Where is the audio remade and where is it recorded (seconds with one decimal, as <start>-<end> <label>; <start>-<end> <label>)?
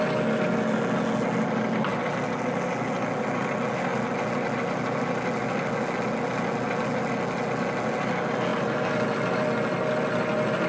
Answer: 0.0-10.7 recorded